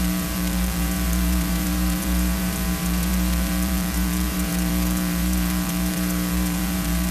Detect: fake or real fake